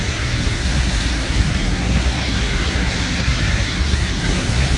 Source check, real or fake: fake